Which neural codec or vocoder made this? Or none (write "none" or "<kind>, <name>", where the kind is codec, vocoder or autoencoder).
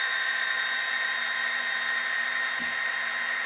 vocoder, BigVGAN v2